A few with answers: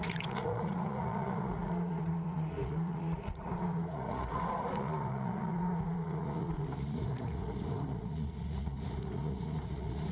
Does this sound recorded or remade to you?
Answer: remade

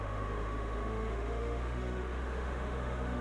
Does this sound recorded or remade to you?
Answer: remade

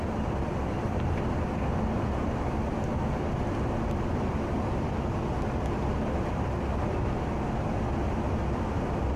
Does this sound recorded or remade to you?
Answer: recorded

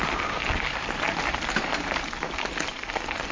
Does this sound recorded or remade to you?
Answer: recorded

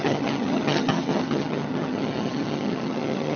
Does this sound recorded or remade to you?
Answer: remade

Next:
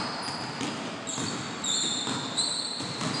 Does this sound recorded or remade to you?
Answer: recorded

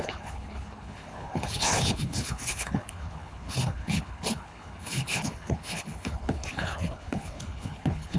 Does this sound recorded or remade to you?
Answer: remade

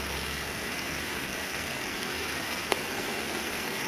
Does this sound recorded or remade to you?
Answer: remade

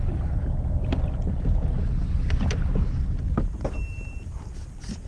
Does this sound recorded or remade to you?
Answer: recorded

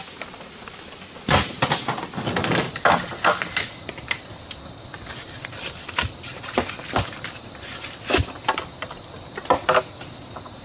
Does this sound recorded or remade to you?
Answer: recorded